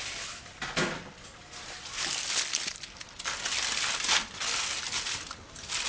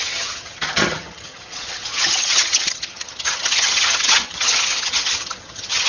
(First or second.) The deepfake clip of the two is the second